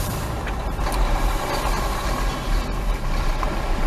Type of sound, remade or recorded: remade